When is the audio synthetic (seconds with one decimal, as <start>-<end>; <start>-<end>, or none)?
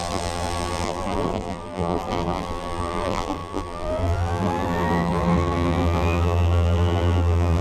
0.0-7.6